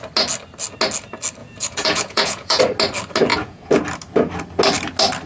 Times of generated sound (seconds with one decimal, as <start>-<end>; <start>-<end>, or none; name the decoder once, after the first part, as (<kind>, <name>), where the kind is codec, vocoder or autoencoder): 1.4-2.6 (vocoder, Vocos); 3.3-3.8